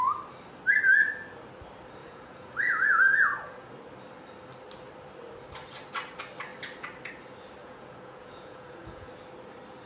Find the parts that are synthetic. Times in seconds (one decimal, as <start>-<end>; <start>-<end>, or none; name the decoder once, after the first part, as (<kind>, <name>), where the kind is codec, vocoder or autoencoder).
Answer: 2.0-3.7 (vocoder, Vocos); 7.6-9.1

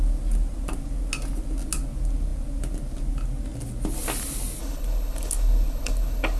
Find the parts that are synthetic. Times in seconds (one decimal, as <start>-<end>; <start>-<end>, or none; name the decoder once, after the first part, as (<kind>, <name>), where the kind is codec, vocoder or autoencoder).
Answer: 4.6-6.4 (codec, HILCodec)

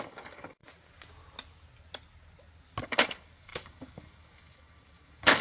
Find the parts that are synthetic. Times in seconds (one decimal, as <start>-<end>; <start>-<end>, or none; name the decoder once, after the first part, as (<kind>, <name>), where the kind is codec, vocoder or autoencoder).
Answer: 0.0-0.6 (codec, DAC); 2.8-5.4

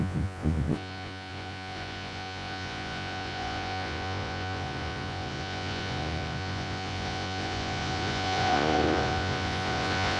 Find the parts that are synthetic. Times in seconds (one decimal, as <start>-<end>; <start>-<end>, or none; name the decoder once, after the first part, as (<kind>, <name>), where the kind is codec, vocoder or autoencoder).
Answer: 0.0-10.2 (vocoder, Vocos)

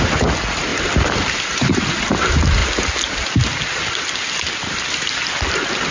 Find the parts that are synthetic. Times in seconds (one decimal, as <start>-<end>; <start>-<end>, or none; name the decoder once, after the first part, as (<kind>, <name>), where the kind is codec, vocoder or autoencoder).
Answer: 0.7-2.1 (vocoder, BigVGAN v2)